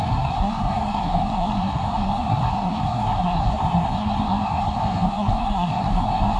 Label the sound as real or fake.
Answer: fake